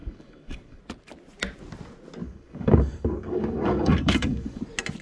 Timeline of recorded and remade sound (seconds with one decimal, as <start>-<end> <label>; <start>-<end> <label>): 0.0-0.8 remade; 0.8-2.2 recorded; 2.2-4.6 remade; 4.6-5.0 recorded